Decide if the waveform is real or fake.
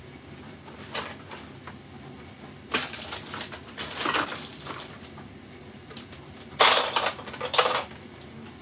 real